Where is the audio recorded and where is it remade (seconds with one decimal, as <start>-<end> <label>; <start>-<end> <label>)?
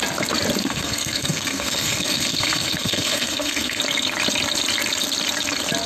0.0-0.6 recorded; 0.6-3.8 remade; 3.8-5.9 recorded